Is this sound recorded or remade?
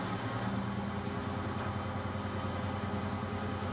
recorded